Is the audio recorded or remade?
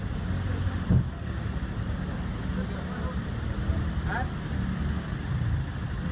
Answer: recorded